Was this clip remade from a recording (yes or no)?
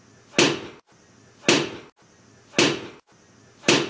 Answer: no